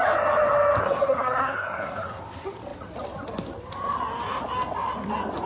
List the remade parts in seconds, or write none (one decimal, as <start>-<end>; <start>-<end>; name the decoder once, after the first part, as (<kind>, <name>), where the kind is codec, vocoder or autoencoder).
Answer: 0.8-2.2 (codec, SNAC)